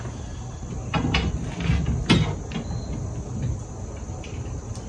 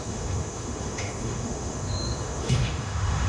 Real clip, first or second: first